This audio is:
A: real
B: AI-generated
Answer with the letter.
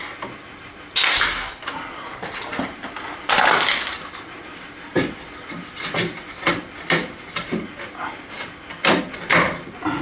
A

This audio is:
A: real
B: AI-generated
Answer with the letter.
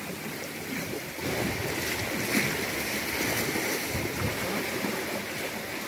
A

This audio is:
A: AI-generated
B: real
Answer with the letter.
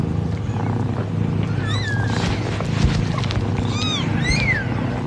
B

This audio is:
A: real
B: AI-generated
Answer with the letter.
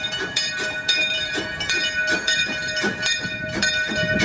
B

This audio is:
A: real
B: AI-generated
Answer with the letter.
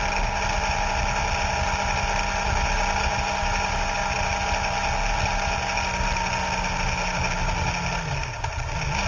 A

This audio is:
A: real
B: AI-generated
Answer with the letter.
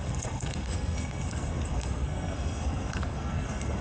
B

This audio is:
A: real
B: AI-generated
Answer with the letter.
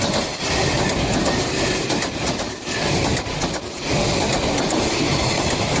A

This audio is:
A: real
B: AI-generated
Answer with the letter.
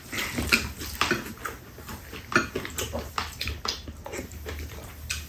A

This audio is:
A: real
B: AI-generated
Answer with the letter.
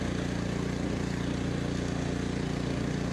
A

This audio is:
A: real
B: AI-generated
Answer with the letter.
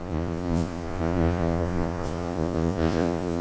B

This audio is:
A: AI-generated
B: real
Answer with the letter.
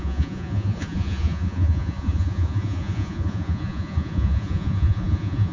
A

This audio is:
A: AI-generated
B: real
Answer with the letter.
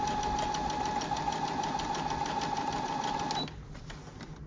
B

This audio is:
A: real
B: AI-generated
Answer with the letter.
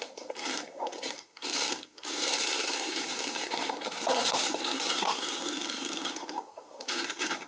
B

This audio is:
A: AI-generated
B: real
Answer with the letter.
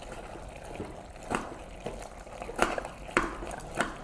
A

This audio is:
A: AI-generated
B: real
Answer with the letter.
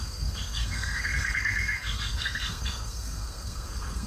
A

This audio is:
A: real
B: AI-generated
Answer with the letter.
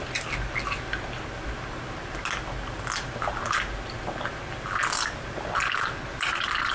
A